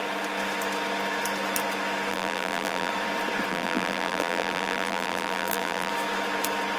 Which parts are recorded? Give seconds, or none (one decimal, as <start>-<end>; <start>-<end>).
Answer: 0.0-2.1; 2.9-3.5; 5.9-6.8